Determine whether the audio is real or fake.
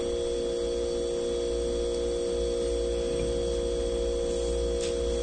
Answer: real